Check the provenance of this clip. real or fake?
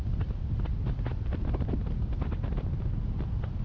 real